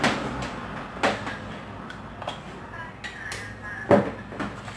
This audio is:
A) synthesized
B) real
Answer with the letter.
B